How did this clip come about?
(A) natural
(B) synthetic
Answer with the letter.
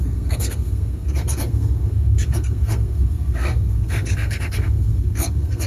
B